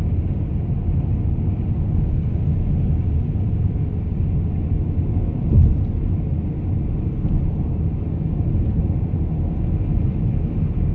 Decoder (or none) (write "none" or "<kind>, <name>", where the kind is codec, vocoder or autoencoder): none